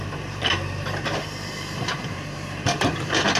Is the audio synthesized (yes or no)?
yes